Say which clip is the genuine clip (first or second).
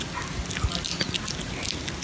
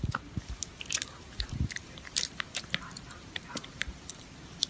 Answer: first